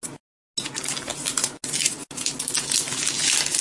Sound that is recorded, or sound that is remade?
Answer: recorded